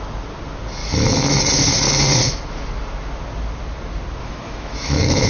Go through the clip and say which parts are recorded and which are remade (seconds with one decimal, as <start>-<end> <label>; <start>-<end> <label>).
0.0-0.8 recorded; 0.8-1.4 remade; 1.4-4.2 recorded; 4.2-5.3 remade